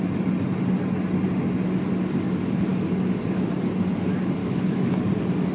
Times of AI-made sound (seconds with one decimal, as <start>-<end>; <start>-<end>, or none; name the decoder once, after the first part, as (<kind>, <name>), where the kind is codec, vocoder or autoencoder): 4.4-5.1 (codec, DAC)